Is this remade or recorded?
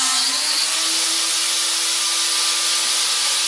recorded